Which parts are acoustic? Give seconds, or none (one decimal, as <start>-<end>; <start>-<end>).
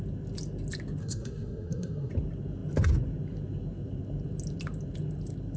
0.0-1.0; 2.1-5.6